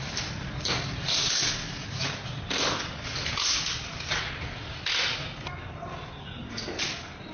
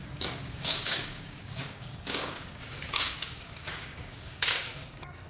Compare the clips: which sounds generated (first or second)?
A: second